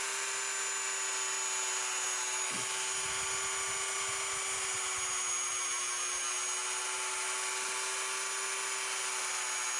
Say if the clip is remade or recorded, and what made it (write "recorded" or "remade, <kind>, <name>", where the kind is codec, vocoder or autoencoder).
recorded